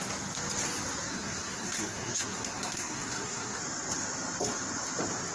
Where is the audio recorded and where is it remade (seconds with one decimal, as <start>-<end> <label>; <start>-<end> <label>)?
0.0-1.1 recorded; 1.1-3.6 remade; 3.6-5.3 recorded